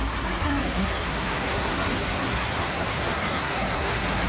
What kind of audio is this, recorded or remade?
remade